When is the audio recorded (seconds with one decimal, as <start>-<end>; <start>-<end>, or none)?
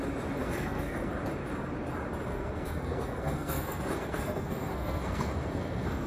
0.0-0.4; 1.1-2.3